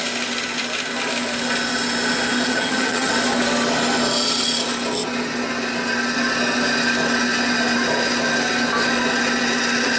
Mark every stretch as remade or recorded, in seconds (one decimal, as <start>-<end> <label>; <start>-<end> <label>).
0.0-2.5 recorded; 2.5-3.1 remade; 3.1-10.0 recorded